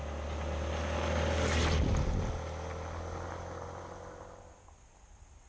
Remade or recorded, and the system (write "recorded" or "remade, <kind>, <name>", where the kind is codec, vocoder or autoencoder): recorded